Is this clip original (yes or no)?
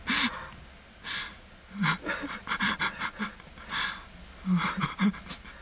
yes